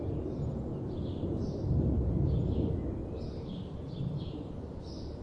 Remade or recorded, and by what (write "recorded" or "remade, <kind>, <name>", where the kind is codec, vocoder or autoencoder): recorded